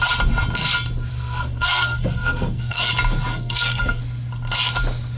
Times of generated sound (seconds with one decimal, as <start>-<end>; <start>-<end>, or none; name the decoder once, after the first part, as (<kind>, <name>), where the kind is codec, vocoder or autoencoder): 1.1-2.9 (codec, SNAC); 3.3-4.0